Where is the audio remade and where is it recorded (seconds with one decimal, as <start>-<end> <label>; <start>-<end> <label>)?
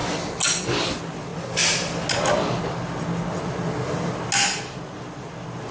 0.0-5.7 recorded